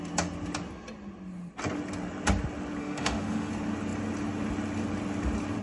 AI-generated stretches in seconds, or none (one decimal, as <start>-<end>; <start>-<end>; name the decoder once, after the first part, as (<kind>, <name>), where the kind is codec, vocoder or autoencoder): 2.8-3.5 (autoencoder, DAC-VAE)